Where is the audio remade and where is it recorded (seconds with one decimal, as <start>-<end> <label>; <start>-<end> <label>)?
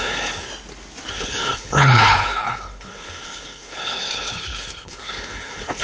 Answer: 0.0-0.5 remade; 0.5-1.1 recorded; 1.1-5.8 remade